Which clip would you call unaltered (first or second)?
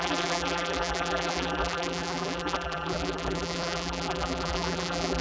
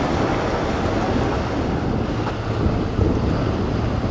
second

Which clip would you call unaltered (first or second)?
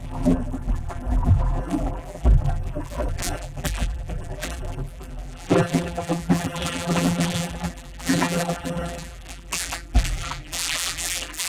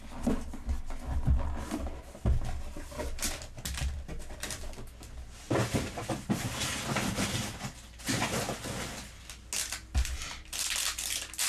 second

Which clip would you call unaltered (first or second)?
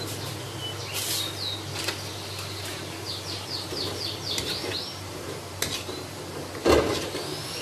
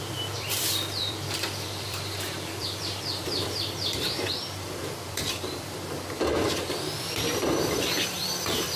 first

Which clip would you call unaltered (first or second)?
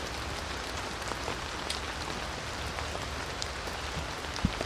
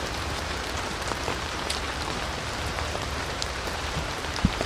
first